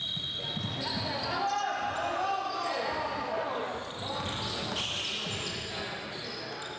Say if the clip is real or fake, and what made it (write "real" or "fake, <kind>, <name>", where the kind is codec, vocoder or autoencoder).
real